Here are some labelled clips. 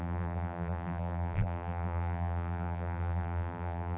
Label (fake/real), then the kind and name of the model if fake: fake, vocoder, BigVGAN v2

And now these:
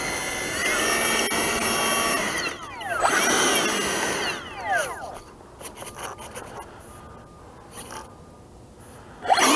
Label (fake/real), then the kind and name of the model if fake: real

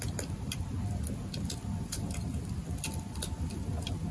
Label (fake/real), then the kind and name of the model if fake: real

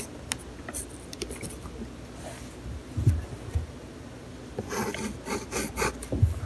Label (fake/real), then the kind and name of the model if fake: real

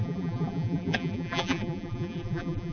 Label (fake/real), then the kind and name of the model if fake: fake, vocoder, BigVGAN v2